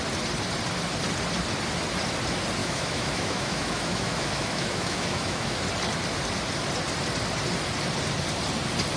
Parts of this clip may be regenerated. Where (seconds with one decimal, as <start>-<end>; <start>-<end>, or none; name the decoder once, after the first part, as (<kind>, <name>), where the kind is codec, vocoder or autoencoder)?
2.6-5.6 (autoencoder, DAC-VAE)